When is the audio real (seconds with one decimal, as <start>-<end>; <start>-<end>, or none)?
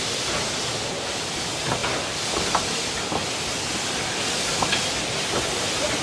0.0-6.0